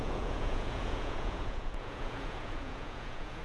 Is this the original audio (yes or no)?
no